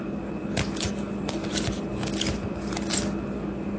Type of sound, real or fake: real